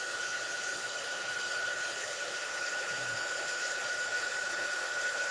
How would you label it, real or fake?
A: fake